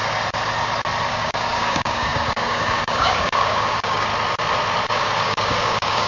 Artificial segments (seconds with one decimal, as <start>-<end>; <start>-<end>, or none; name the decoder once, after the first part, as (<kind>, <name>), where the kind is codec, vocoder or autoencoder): 1.1-4.1 (codec, DAC); 4.9-6.1